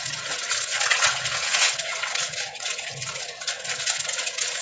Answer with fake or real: fake